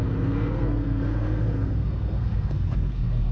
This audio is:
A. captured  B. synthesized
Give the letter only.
B